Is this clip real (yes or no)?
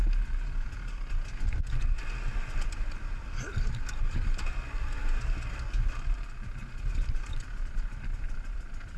yes